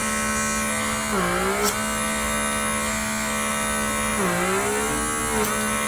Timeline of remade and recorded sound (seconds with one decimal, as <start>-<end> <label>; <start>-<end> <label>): 0.0-5.9 recorded